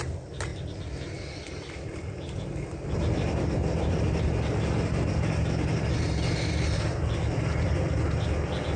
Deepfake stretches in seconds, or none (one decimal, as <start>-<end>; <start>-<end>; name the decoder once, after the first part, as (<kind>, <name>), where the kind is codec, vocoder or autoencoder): none